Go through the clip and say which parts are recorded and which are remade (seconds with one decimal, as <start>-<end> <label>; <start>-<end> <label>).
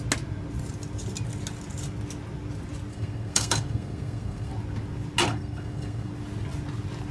0.0-2.9 recorded; 2.9-4.5 remade; 4.5-5.3 recorded; 5.3-6.1 remade; 6.1-7.1 recorded